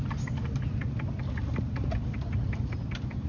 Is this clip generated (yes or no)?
no